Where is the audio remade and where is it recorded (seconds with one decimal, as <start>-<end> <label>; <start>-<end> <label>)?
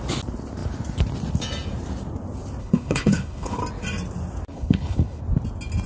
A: 0.0-2.6 recorded; 2.6-3.6 remade; 3.6-4.5 recorded; 4.5-5.2 remade; 5.2-5.9 recorded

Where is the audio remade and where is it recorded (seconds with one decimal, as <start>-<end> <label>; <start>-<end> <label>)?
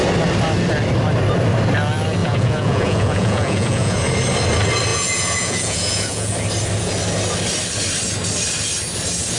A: 0.0-2.2 recorded; 2.2-4.0 remade; 4.0-4.9 recorded; 4.9-6.3 remade; 6.3-9.4 recorded